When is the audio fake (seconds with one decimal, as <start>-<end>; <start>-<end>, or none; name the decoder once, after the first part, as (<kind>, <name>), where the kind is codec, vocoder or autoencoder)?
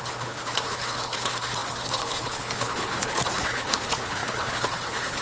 0.0-5.2 (codec, HILCodec)